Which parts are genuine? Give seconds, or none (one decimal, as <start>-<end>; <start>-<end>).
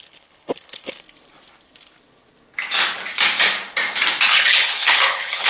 1.0-4.3